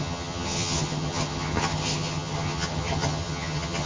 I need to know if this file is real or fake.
fake